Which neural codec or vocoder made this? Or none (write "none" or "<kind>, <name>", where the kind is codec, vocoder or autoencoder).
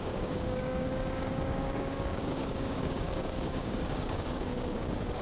codec, DAC